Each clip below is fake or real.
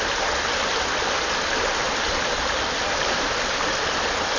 real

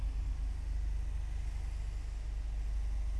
real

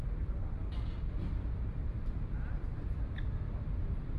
real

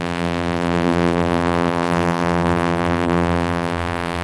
fake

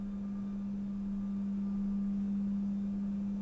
real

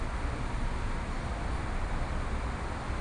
real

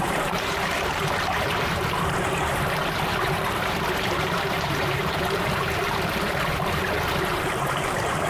fake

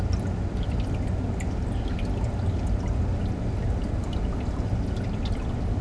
real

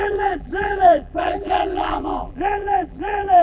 fake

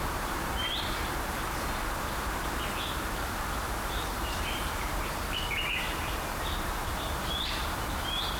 fake